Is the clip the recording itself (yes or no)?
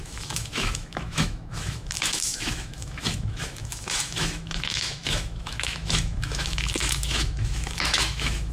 no